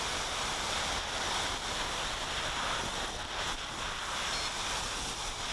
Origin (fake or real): real